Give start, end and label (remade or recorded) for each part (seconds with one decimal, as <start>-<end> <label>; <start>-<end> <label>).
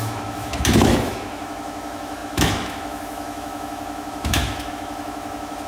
0.0-5.7 remade